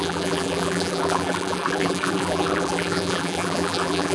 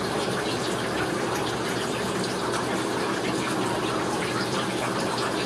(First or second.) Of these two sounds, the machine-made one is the first